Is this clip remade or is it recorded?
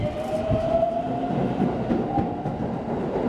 recorded